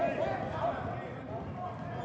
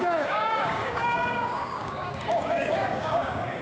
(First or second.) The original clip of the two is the first